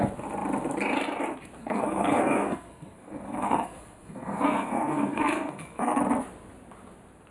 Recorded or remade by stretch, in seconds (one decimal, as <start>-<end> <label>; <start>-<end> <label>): 0.0-1.6 recorded; 1.6-6.0 remade; 6.0-7.3 recorded